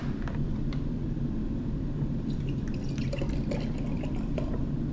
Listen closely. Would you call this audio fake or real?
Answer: real